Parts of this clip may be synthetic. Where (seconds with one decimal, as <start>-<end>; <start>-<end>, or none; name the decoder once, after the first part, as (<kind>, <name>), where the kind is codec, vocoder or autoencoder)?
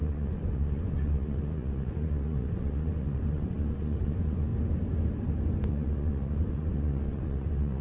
0.0-4.5 (vocoder, Vocos); 5.7-7.8